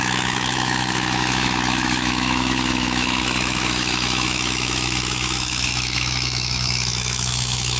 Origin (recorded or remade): remade